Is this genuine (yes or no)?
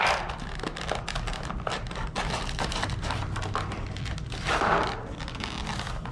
yes